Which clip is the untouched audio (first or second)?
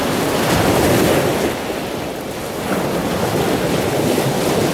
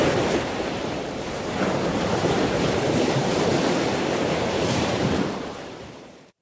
first